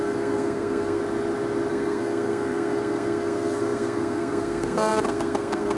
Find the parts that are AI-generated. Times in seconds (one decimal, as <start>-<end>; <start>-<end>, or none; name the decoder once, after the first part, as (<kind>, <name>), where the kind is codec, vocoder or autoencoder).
0.0-1.0 (codec, SNAC); 1.7-5.8